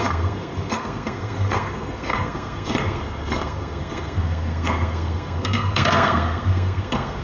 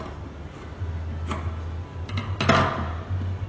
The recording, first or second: second